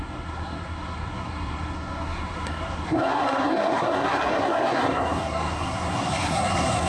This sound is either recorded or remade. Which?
remade